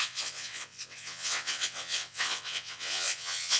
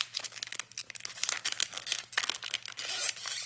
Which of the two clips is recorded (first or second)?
second